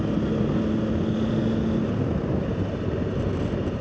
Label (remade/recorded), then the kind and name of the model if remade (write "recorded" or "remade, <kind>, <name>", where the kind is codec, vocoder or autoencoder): recorded